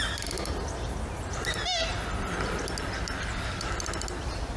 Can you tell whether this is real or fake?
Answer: real